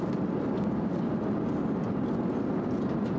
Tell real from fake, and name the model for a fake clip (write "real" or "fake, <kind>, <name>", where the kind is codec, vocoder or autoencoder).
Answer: real